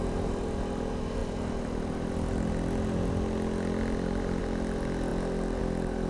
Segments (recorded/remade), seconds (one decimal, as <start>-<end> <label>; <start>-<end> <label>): 0.0-6.1 recorded